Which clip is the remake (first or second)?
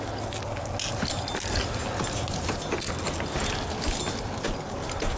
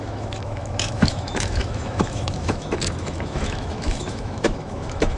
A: second